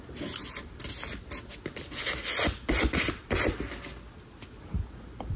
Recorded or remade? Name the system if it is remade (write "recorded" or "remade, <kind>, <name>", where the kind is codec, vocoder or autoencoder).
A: recorded